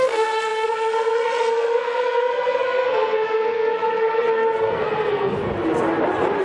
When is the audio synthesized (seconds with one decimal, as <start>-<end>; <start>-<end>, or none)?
0.0-5.4